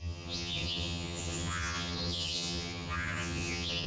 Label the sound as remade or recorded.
remade